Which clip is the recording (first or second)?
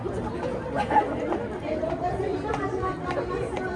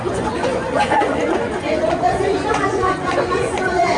first